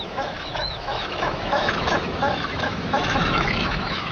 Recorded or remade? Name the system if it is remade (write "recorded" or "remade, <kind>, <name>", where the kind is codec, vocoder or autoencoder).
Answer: remade, autoencoder, DAC-VAE